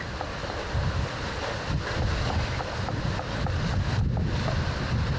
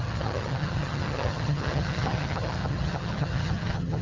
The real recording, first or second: first